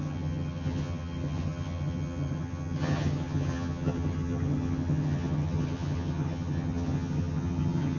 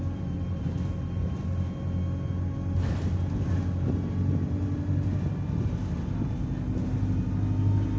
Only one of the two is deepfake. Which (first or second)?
first